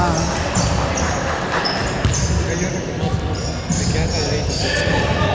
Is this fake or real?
real